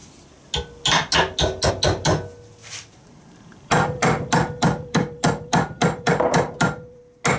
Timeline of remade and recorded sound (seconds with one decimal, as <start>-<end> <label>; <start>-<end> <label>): 0.0-2.6 recorded; 2.6-7.0 remade; 7.0-7.4 recorded